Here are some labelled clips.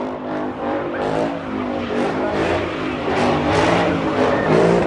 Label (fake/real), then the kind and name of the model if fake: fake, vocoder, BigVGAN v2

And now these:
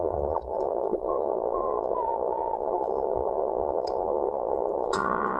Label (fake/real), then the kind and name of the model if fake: fake, vocoder, Vocos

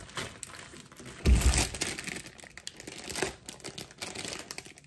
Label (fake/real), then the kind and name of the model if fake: real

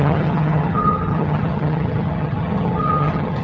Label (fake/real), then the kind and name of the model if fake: fake, vocoder, HiFi-GAN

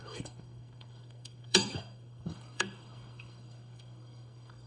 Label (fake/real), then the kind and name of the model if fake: fake, codec, SNAC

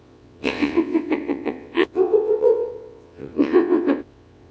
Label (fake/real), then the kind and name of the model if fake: fake, vocoder, WaveNeXt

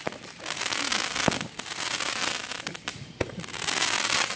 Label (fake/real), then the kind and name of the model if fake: real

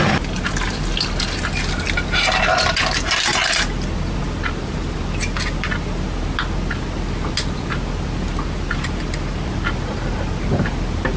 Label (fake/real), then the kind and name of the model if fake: real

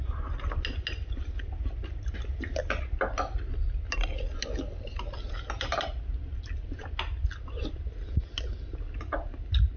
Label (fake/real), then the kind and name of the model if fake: real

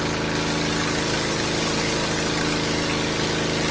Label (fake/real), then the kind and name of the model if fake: real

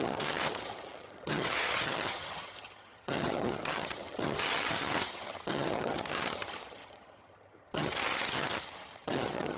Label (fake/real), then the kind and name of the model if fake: fake, vocoder, HiFi-GAN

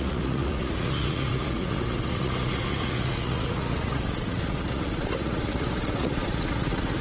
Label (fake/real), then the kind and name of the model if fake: fake, vocoder, Vocos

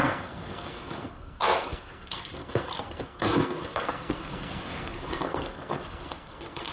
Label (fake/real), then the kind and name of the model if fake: fake, codec, SNAC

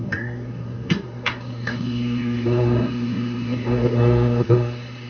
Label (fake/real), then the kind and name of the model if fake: fake, codec, SNAC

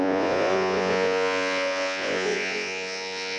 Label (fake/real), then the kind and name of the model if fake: fake, vocoder, Vocos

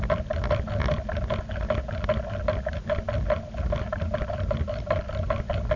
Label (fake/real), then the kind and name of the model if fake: real